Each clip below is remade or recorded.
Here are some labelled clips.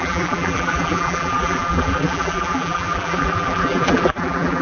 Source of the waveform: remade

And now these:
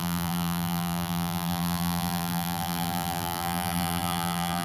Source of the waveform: remade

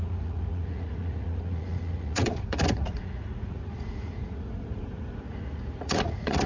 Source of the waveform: remade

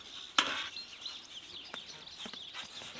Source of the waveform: recorded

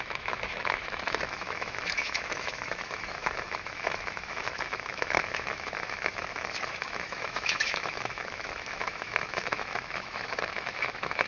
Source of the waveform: remade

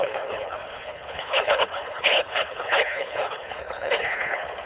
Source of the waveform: remade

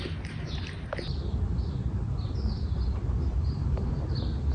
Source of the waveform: recorded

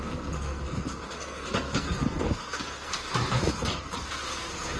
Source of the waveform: remade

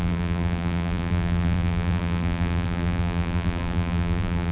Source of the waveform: remade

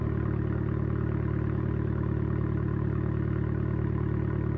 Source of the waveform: recorded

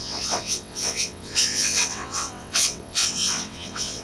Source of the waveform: remade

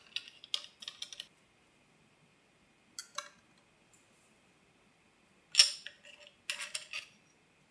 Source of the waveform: recorded